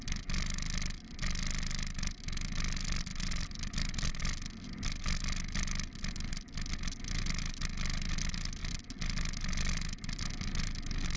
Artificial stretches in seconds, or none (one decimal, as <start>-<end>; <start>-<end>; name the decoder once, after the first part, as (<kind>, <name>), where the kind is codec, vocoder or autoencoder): none